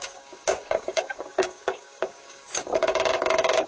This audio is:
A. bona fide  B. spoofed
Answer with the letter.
B